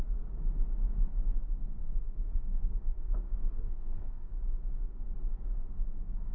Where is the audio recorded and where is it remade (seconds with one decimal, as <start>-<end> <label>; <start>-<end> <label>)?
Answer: 0.0-1.8 recorded; 1.8-4.3 remade; 4.3-6.3 recorded